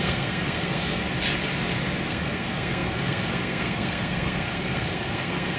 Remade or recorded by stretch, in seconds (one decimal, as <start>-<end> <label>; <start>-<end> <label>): 0.0-1.0 remade; 1.0-2.1 recorded; 2.1-5.6 remade